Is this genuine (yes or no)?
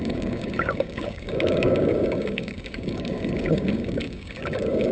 no